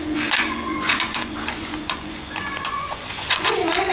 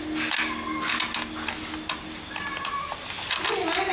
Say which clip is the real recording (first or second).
second